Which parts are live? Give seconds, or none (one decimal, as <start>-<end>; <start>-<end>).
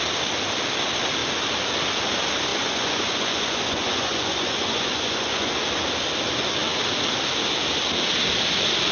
0.0-2.5; 5.5-8.9